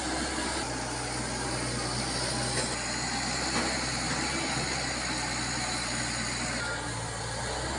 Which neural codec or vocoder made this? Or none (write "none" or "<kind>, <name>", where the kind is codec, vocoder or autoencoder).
none